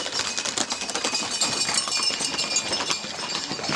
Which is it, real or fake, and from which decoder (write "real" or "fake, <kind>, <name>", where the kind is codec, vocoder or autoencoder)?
real